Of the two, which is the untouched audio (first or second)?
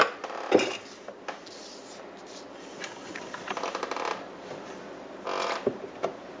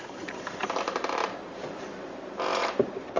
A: first